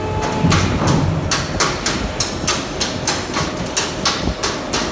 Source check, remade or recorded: recorded